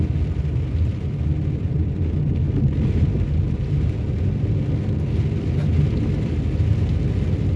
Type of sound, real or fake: real